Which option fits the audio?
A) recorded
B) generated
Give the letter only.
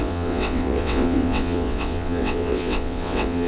B